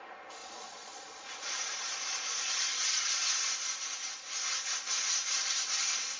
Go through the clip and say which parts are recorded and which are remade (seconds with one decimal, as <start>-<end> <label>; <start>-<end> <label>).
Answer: 0.0-0.4 recorded; 0.4-3.2 remade; 3.2-6.2 recorded